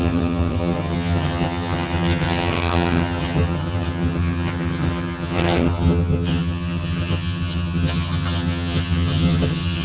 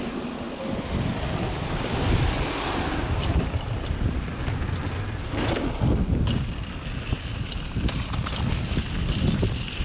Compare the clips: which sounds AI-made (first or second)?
first